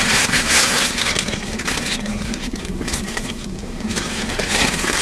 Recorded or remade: remade